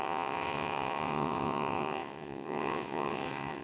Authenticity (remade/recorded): remade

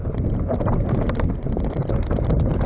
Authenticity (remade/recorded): recorded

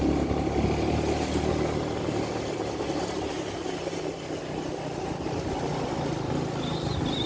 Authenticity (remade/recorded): recorded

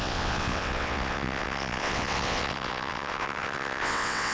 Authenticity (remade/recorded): remade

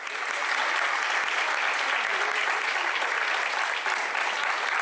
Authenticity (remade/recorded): recorded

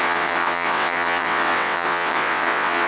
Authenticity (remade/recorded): remade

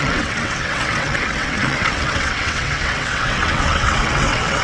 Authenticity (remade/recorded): remade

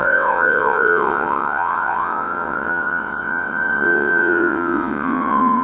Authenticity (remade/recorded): remade